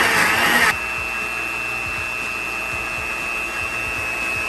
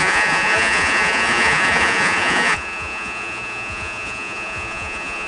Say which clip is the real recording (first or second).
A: first